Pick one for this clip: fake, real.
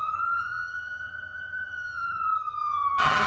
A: fake